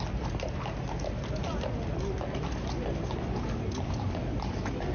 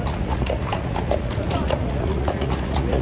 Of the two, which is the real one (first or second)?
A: first